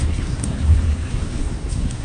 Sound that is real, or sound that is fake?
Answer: fake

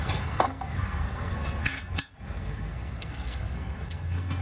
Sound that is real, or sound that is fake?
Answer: fake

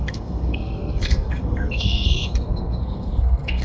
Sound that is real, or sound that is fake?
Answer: fake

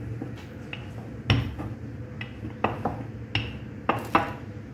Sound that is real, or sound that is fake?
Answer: real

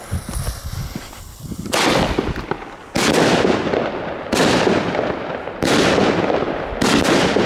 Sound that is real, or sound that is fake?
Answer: real